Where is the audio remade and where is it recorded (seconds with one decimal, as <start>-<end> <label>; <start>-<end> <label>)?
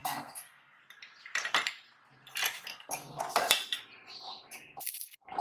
0.0-0.8 remade; 0.8-2.7 recorded; 2.7-3.2 remade; 3.2-5.4 recorded